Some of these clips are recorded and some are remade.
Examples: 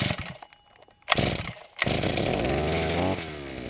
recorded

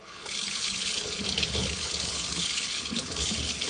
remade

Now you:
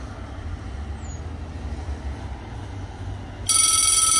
recorded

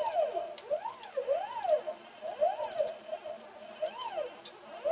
recorded